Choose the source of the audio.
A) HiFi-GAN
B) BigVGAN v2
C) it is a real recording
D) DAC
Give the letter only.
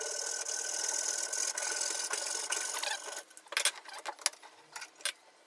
C